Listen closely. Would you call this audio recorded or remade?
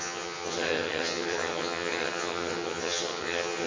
remade